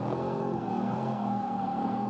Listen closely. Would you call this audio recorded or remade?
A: remade